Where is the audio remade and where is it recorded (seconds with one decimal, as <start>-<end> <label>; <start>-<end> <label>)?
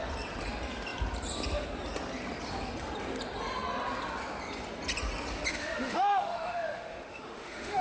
0.0-5.5 recorded; 5.5-7.8 remade